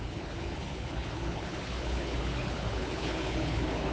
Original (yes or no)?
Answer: no